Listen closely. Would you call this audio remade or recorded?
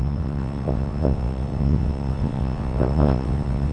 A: remade